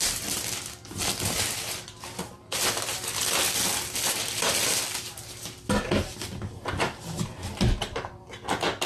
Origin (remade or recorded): recorded